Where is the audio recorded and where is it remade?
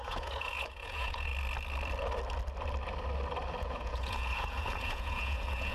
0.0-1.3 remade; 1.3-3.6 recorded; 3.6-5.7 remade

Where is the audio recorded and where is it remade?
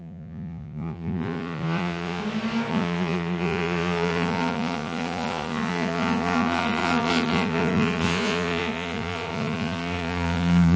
0.0-2.2 remade; 2.2-2.7 recorded; 2.7-10.8 remade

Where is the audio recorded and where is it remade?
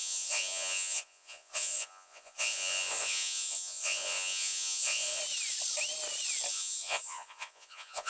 0.0-5.2 remade; 5.2-6.5 recorded; 6.5-8.1 remade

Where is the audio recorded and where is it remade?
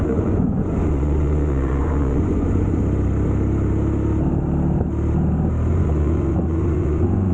0.0-2.8 remade; 2.8-5.7 recorded; 5.7-7.3 remade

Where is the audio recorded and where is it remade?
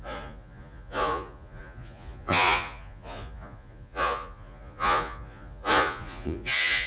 0.0-6.9 remade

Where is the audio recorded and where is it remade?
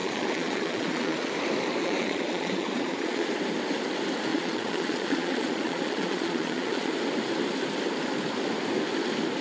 0.0-1.3 remade; 1.3-1.8 recorded; 1.8-3.3 remade; 3.3-4.3 recorded; 4.3-6.9 remade; 6.9-9.4 recorded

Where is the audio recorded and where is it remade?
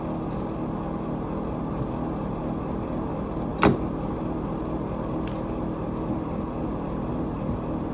0.0-7.9 recorded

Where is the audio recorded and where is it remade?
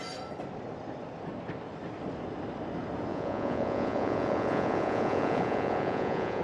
0.0-3.1 recorded; 3.1-6.4 remade